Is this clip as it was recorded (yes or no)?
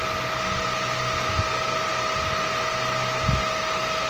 yes